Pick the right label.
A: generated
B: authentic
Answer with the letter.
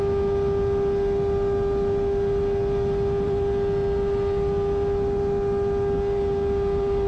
B